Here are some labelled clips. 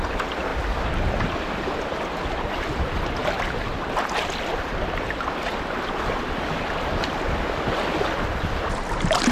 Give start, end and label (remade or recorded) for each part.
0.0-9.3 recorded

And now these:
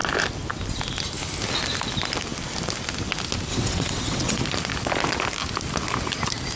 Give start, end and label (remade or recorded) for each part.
0.0-3.5 recorded; 3.5-4.4 remade; 4.4-6.6 recorded

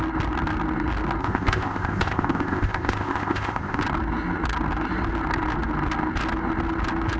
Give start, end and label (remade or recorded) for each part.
0.0-1.2 recorded; 1.2-3.8 remade; 3.8-7.2 recorded